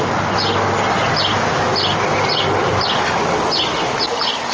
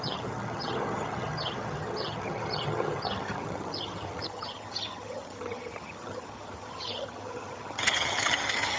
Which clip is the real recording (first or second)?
first